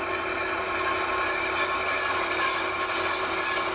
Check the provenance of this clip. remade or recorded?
recorded